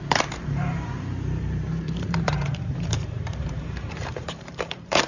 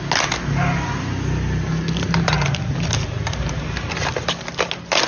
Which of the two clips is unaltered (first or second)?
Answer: second